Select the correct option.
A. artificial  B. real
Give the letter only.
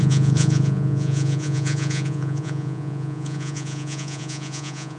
A